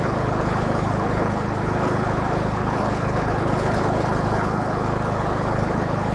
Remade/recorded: remade